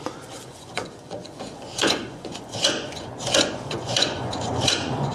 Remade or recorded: remade